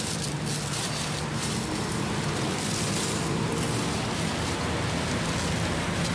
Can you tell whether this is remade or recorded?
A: recorded